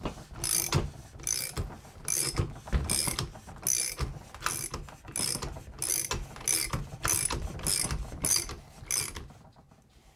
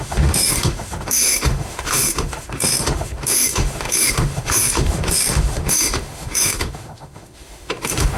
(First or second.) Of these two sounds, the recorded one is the first